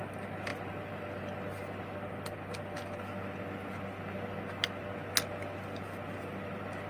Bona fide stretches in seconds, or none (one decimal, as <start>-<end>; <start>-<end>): 0.0-6.9